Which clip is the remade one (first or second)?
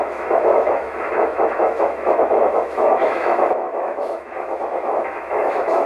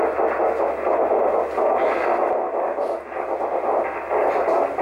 first